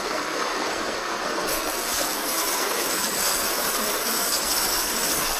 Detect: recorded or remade remade